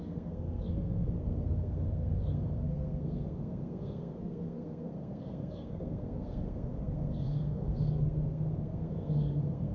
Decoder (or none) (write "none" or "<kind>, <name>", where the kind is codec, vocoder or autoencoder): codec, SNAC